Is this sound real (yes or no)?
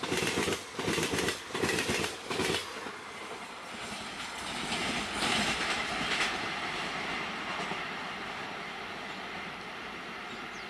yes